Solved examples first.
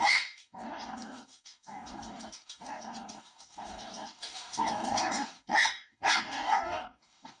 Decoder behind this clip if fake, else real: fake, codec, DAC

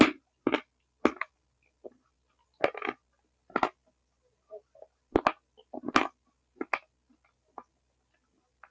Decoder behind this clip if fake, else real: real